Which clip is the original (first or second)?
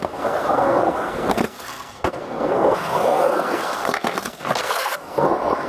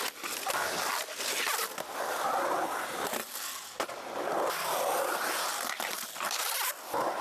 second